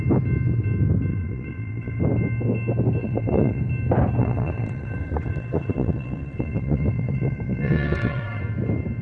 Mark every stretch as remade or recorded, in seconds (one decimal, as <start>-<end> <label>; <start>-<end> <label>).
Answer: 0.0-1.1 recorded; 1.1-2.0 remade; 2.0-3.0 recorded; 3.0-3.6 remade; 3.6-4.2 recorded; 4.2-8.4 remade; 8.4-9.0 recorded